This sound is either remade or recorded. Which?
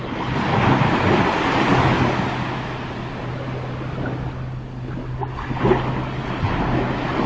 recorded